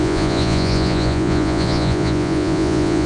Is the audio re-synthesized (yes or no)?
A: yes